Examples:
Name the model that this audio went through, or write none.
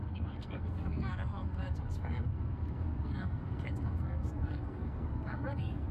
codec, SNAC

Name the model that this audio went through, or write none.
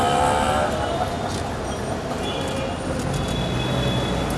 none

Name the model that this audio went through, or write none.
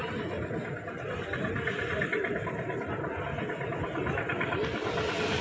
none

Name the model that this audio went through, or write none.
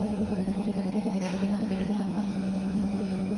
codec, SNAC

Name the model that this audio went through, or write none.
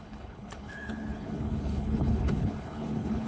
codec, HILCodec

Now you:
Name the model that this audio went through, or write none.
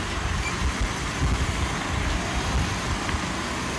none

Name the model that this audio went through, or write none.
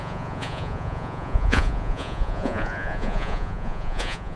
vocoder, Vocos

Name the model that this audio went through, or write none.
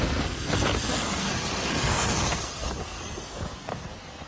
codec, SNAC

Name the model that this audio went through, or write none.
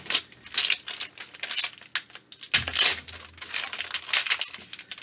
none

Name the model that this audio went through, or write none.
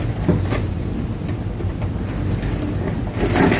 none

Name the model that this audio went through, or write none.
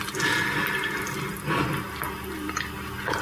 none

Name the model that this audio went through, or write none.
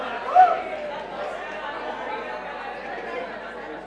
none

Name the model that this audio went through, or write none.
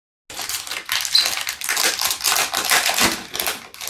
none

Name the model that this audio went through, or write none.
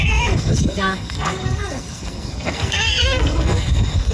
codec, SNAC